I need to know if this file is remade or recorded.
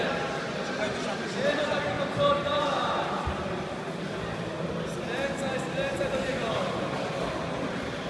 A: recorded